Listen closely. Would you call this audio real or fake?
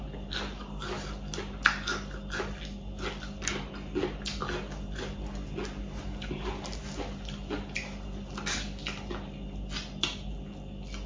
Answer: real